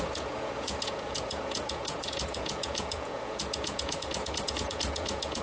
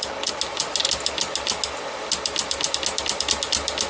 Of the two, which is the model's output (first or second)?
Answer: first